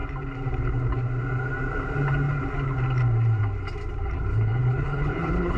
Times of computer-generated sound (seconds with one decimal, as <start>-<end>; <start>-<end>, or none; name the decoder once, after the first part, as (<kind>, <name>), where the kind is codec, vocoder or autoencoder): 4.3-5.6 (codec, HILCodec)

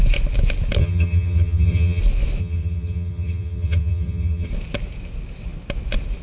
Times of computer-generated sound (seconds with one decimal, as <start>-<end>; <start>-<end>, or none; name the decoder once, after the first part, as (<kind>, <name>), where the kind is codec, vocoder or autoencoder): 0.8-2.0 (vocoder, HiFi-GAN); 2.4-4.5

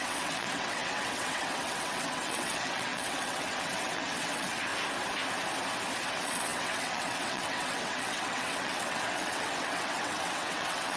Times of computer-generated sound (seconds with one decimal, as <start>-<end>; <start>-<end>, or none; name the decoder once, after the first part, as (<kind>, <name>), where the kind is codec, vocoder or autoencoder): 0.0-4.7 (vocoder, WaveNeXt); 6.1-11.0